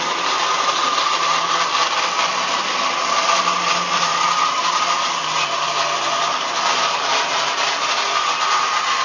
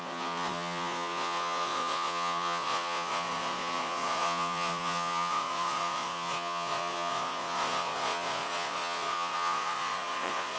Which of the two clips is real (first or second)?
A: first